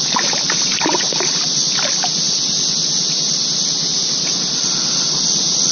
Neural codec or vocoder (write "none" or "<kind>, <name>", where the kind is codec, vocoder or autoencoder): none